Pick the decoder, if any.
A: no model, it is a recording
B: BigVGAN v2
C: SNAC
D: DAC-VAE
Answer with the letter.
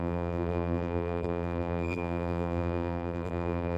B